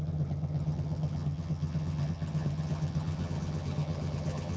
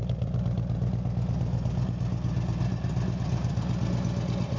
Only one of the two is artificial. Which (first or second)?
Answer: first